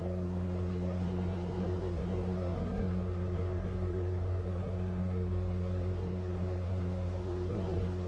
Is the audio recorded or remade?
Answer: remade